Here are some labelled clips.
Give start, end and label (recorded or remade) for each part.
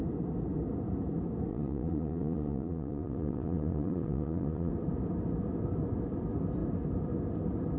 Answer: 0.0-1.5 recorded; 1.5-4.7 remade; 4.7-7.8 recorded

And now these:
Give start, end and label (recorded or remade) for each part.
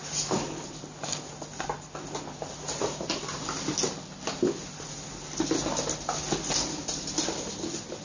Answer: 0.0-8.0 recorded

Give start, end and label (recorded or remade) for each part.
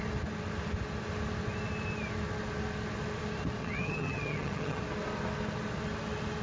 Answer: 0.0-3.6 recorded; 3.6-4.8 remade; 4.8-6.4 recorded